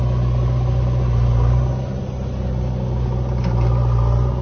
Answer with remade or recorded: recorded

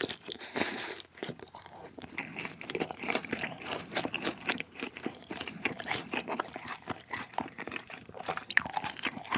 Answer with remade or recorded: remade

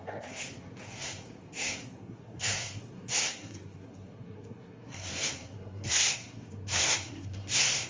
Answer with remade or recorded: remade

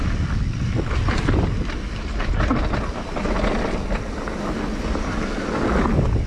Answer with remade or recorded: recorded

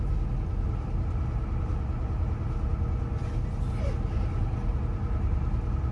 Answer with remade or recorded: recorded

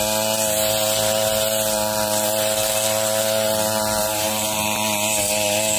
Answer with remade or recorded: recorded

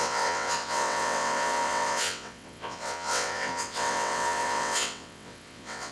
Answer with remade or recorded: remade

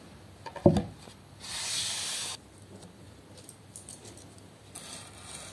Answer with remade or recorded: recorded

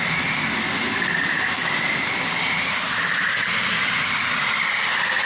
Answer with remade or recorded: recorded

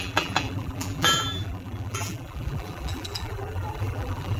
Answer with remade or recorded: remade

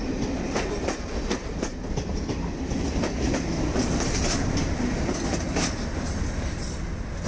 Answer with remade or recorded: remade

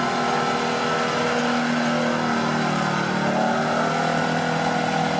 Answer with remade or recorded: recorded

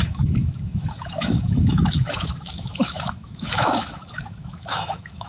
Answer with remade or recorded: remade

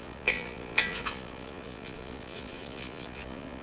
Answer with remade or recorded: remade